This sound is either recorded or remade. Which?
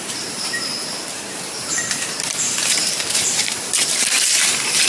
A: remade